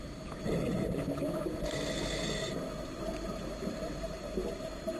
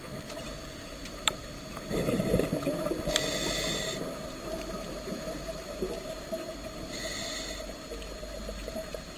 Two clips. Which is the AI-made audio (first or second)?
second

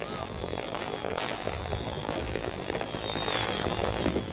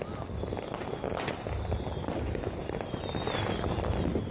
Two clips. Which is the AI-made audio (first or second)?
first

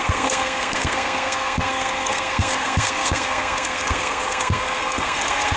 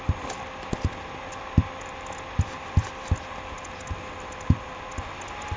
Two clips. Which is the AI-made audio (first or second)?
first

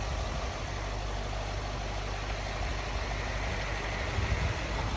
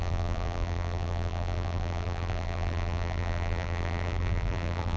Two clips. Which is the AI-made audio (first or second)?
second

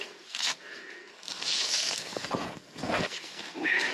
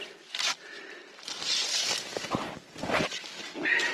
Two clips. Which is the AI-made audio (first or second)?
first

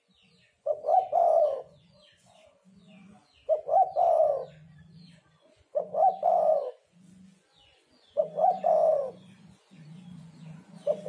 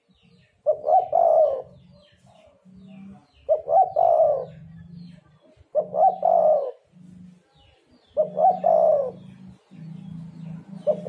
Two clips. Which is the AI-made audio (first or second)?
first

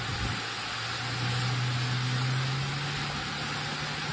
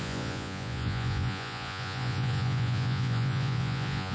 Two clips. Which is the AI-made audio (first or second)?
second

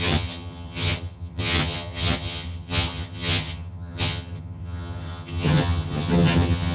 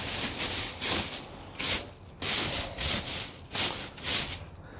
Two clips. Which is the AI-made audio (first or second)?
first